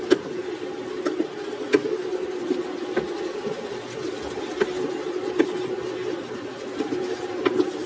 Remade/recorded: recorded